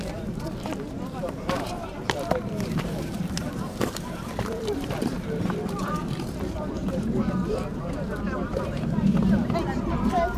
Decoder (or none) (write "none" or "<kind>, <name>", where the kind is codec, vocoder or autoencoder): vocoder, BigVGAN v2